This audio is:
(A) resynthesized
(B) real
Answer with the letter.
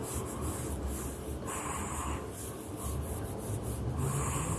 B